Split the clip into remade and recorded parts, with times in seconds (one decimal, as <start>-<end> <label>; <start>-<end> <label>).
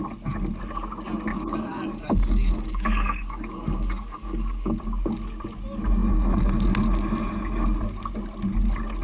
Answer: 0.0-1.3 recorded; 1.3-4.7 remade; 4.7-9.0 recorded